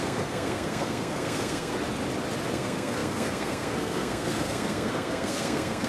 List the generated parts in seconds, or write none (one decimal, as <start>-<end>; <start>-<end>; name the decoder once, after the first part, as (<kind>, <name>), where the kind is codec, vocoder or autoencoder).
0.0-1.7 (codec, SNAC); 2.5-5.9